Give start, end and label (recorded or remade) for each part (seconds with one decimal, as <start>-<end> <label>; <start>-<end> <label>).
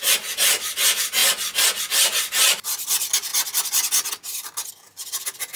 0.0-1.2 remade; 1.2-1.8 recorded; 1.8-3.3 remade; 3.3-4.7 recorded; 4.7-5.6 remade